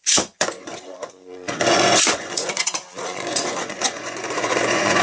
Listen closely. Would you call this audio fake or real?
fake